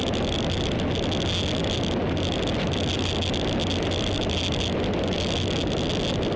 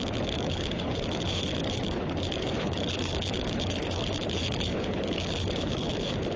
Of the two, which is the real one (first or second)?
first